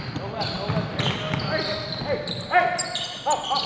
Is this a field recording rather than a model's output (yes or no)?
yes